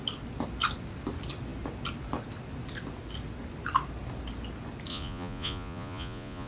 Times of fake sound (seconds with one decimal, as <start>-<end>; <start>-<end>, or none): 4.9-6.5